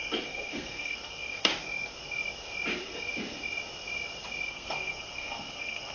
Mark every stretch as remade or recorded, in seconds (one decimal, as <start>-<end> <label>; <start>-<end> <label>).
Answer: 0.0-1.5 remade; 1.5-4.5 recorded; 4.5-5.9 remade